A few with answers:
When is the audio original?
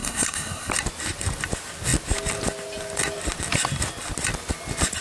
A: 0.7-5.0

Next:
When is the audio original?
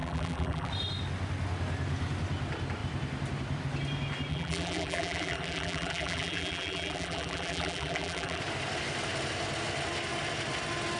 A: 0.7-4.3; 8.4-11.0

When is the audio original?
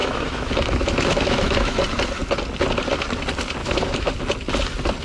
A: 1.8-3.6; 4.1-5.0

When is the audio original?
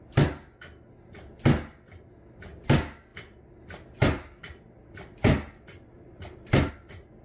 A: 0.0-3.1; 6.7-7.2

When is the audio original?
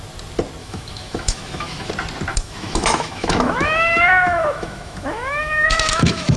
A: 0.0-0.6; 1.9-2.3